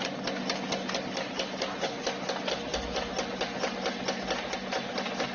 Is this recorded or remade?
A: recorded